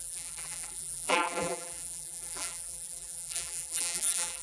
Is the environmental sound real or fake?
fake